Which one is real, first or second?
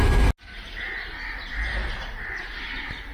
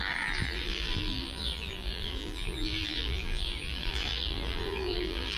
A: first